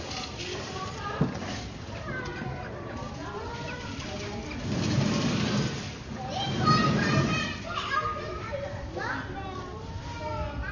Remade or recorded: recorded